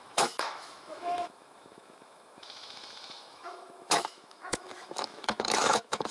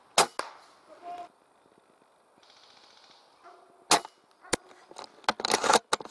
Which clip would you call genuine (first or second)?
second